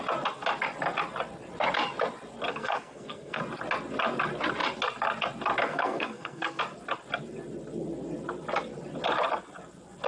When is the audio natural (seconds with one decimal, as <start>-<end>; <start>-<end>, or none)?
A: 0.0-2.5; 3.4-5.7; 6.6-10.1